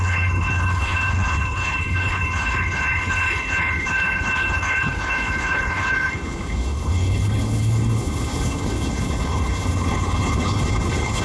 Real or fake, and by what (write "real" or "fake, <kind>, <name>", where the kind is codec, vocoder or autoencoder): fake, codec, HILCodec